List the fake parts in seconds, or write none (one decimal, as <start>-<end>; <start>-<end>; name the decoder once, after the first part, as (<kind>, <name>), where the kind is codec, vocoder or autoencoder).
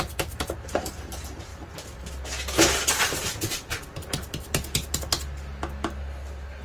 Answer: none